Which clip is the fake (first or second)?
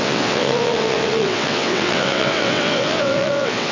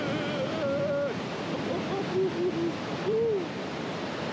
first